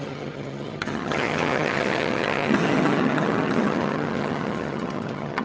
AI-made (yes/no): yes